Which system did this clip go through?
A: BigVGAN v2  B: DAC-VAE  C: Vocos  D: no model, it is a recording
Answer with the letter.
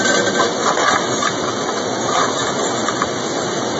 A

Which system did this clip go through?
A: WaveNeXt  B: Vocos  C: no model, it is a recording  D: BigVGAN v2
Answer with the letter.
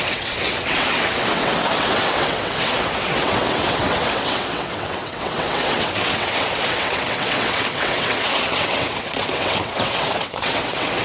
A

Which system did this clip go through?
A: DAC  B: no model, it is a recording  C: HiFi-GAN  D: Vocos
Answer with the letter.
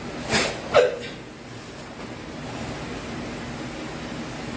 B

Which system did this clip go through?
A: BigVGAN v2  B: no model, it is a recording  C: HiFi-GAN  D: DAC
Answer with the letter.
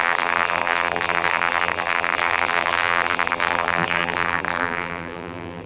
A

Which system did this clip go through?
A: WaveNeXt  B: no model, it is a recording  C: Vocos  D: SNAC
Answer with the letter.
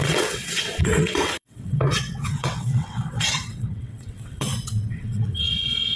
A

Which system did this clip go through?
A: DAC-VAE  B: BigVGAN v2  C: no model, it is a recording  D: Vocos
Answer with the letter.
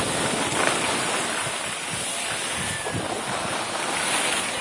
C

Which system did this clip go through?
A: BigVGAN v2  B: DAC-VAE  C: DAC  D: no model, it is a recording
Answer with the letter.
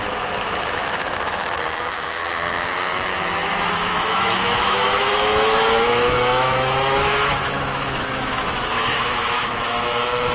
B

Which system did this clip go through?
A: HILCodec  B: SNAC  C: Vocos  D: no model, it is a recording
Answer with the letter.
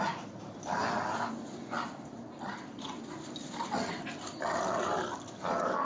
D